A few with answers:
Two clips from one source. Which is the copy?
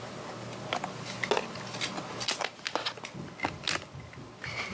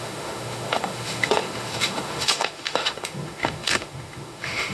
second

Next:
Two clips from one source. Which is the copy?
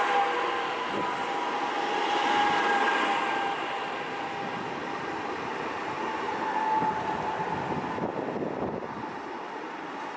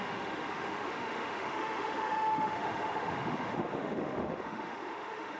second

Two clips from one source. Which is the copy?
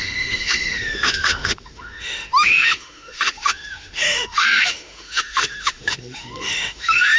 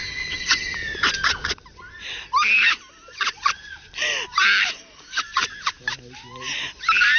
first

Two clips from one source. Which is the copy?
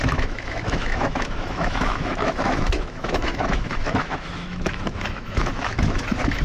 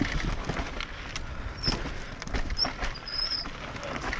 first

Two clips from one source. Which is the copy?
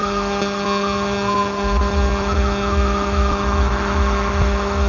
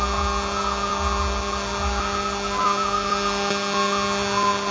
first